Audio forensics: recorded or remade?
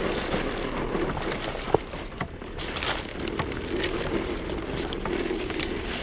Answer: recorded